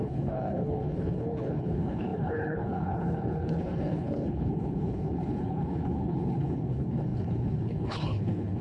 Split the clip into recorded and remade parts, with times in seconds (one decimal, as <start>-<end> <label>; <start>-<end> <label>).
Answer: 0.0-8.6 remade